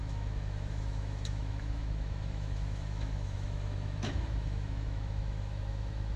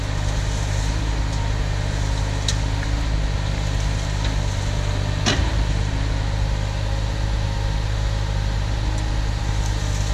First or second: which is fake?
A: first